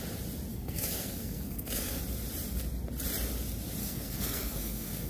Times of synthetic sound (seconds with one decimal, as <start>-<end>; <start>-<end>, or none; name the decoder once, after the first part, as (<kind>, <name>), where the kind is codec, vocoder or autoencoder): 0.5-2.0 (codec, SNAC); 3.8-5.1